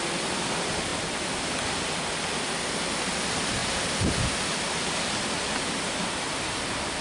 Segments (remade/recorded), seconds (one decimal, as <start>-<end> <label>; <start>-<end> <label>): 0.0-3.6 recorded; 3.6-5.9 remade; 5.9-7.0 recorded